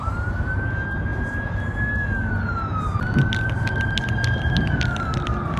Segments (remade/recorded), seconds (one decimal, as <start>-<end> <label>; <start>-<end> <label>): 0.0-5.6 recorded